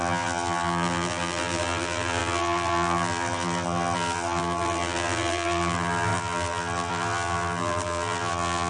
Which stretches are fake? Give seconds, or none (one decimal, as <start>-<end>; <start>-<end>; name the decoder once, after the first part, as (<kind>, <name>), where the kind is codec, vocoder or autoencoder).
0.0-8.7 (vocoder, BigVGAN v2)